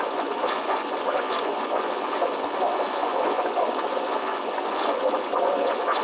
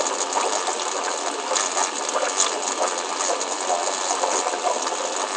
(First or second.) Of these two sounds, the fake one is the first